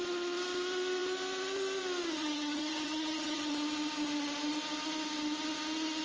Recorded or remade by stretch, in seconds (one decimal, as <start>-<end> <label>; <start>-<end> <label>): 0.0-2.2 recorded; 2.2-3.5 remade; 3.5-6.0 recorded